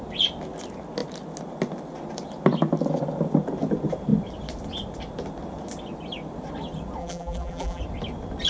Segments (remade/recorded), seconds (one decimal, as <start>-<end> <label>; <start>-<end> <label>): 0.0-7.0 recorded; 7.0-7.8 remade; 7.8-8.5 recorded